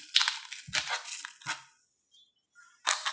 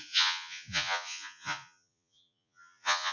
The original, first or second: first